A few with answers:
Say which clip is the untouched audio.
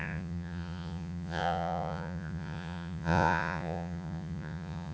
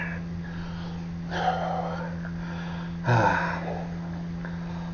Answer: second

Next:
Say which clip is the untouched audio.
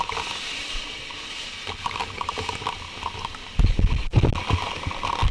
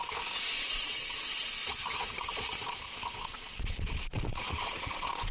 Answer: first